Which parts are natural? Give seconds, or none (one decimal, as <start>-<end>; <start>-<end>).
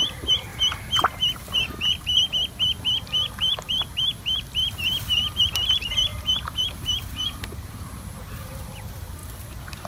0.5-2.8; 9.2-9.9